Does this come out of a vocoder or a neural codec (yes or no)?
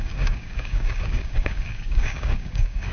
yes